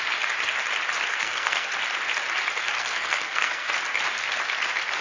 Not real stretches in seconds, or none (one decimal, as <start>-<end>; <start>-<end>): 1.1-1.7; 2.6-3.8